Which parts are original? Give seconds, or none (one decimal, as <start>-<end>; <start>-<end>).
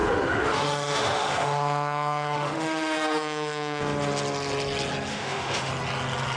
3.8-5.1; 5.7-6.4